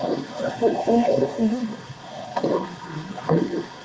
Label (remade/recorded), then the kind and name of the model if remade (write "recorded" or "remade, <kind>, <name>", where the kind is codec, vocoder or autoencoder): remade, codec, SNAC